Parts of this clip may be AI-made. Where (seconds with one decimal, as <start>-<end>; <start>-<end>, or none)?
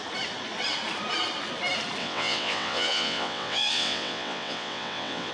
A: 2.0-5.3